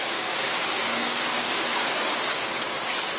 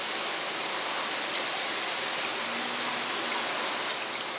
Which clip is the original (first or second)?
second